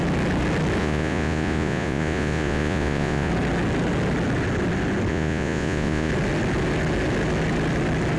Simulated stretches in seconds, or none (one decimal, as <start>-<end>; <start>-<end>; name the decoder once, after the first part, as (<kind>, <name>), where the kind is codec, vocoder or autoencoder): 0.8-3.3 (vocoder, Vocos); 5.1-6.1